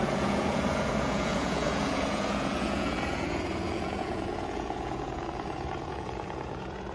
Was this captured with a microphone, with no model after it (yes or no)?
no